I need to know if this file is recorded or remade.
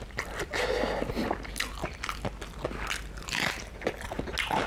recorded